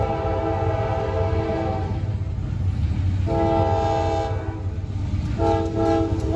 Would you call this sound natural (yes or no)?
yes